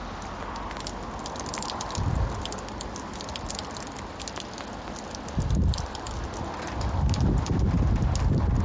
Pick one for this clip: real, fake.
real